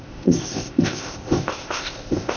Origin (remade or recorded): remade